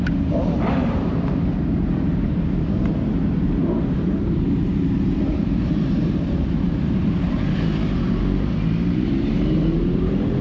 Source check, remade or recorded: remade